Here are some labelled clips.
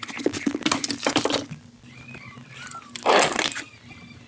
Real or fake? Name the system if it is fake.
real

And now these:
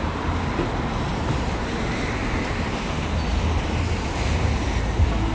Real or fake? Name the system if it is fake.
real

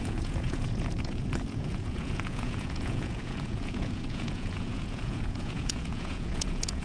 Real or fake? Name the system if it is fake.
fake, vocoder, Vocos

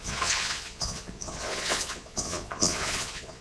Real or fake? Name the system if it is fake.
fake, vocoder, Vocos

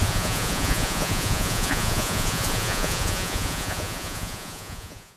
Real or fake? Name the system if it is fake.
fake, vocoder, Vocos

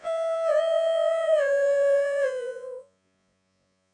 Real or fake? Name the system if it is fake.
fake, vocoder, Vocos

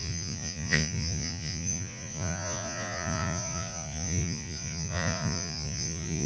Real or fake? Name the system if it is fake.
fake, vocoder, Vocos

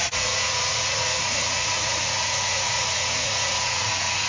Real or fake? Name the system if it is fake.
fake, vocoder, Vocos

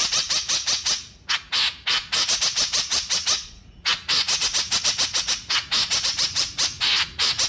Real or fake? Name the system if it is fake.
fake, vocoder, Vocos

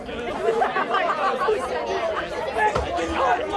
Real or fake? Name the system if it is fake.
real